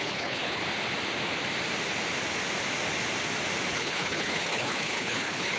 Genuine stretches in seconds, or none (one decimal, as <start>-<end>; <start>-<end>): 0.6-3.7

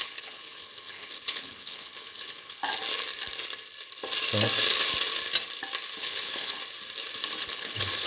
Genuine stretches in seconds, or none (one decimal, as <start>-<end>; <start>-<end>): 2.6-6.0; 6.6-7.4